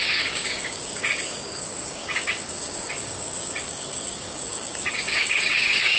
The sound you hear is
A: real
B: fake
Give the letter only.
B